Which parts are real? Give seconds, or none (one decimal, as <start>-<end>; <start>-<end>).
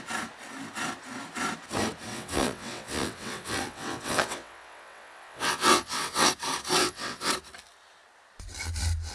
0.0-2.1; 6.3-6.8; 7.3-9.1